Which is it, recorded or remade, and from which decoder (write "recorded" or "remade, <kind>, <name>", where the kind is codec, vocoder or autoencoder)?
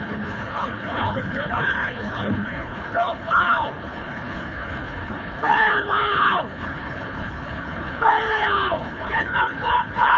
remade, codec, HILCodec